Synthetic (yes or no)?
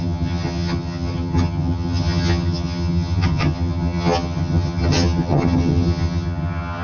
yes